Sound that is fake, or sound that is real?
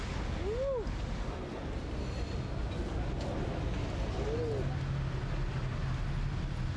real